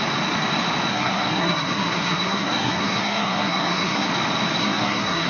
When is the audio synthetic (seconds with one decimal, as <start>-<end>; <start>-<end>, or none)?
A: 0.9-4.1; 4.6-5.3